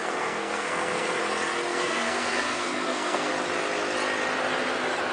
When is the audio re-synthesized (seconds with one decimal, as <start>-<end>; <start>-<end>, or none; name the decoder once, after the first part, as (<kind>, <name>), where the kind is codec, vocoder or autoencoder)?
0.0-1.2 (codec, SNAC); 1.7-3.3